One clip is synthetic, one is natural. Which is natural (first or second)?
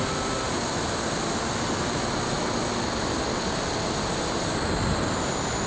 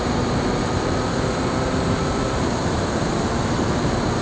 first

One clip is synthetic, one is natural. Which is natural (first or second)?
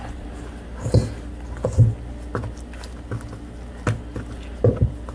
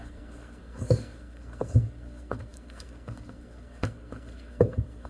first